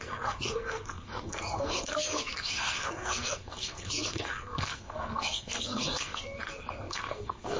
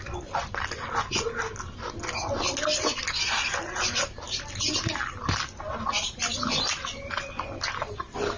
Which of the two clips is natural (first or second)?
second